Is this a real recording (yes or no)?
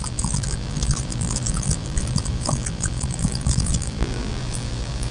no